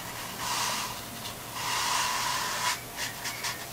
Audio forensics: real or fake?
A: real